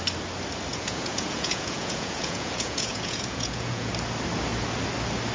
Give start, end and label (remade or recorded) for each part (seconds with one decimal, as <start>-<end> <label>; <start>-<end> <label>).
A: 0.0-0.7 recorded; 0.7-3.9 remade; 3.9-5.3 recorded